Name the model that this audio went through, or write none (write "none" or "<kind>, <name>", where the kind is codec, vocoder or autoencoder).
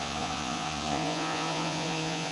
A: vocoder, Vocos